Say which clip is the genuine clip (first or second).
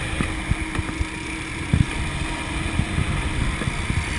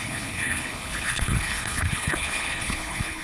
first